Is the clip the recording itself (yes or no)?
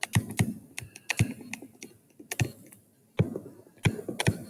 yes